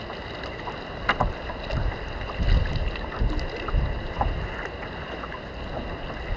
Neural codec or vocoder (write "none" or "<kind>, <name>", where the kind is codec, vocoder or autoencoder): none